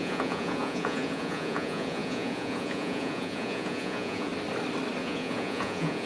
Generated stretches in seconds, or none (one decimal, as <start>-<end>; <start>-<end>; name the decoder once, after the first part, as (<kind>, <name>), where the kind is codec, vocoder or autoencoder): 0.0-4.3 (vocoder, Vocos); 5.0-6.1